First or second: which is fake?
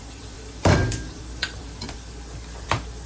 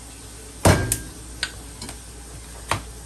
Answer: first